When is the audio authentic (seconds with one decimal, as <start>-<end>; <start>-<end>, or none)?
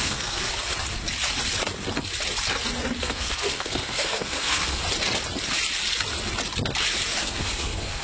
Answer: 0.5-3.0; 4.8-7.2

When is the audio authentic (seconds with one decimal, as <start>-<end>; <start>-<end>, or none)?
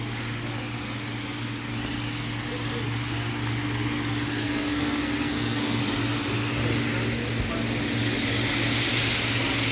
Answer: 0.0-4.4; 5.8-9.7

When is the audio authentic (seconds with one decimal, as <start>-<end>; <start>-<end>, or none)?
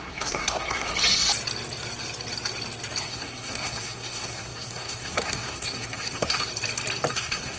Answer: 0.9-3.0; 6.5-7.1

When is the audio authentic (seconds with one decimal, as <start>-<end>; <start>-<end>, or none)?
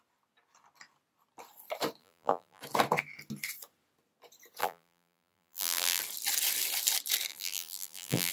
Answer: 0.0-2.0; 2.6-4.6; 6.0-7.3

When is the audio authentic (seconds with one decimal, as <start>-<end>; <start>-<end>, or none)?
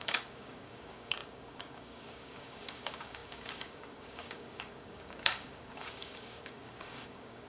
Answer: none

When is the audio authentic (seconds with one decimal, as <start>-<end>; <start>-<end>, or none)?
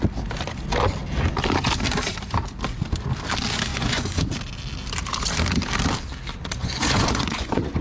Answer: 0.0-3.7; 4.2-6.6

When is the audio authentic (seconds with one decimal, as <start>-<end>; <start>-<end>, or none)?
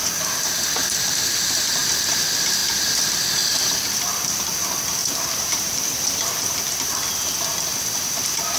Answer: 0.0-5.0; 6.9-8.6